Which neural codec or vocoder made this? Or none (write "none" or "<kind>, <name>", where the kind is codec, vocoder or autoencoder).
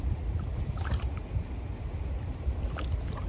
none